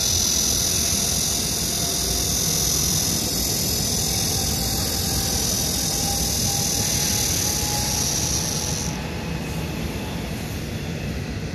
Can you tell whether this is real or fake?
real